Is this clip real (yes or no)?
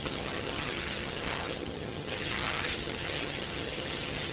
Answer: no